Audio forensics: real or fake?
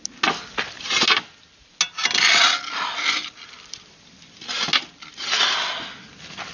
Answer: real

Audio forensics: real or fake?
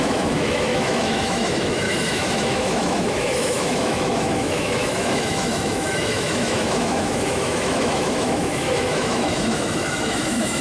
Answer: fake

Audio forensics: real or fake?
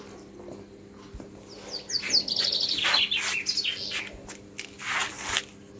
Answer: real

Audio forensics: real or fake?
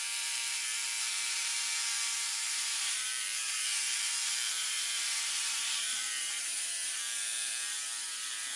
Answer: fake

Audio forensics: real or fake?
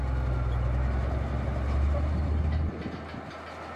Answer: real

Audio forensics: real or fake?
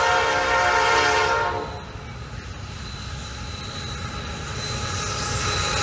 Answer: real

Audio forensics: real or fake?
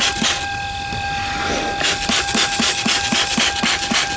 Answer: real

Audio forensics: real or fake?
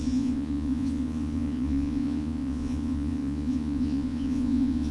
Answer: fake